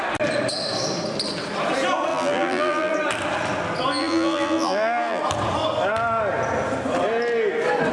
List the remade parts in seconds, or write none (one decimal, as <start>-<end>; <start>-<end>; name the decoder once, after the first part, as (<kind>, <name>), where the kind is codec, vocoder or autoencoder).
2.1-2.9 (vocoder, BigVGAN v2); 3.9-5.2